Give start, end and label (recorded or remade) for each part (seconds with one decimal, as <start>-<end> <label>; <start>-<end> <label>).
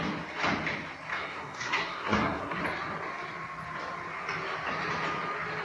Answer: 0.0-1.1 recorded; 1.1-2.6 remade; 2.6-5.6 recorded